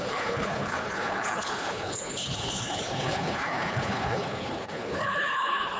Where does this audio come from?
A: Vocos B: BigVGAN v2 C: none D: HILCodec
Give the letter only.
D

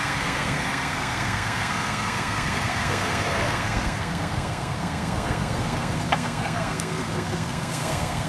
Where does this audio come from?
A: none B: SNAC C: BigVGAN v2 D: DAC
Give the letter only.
B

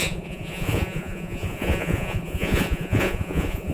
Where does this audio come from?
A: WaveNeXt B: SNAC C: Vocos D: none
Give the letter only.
C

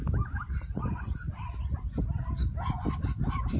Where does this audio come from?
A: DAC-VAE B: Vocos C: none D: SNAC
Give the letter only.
C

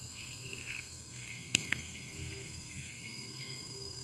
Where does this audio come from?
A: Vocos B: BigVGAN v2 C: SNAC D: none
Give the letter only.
C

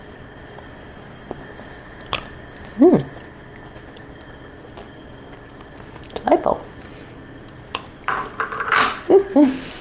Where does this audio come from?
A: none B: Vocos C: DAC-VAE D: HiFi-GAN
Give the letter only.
A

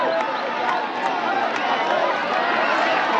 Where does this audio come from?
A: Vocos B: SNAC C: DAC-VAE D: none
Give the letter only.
D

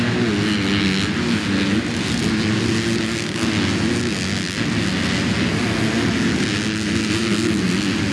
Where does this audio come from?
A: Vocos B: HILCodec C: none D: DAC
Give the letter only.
C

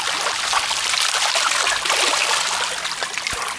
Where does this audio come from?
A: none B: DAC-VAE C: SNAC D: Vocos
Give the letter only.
A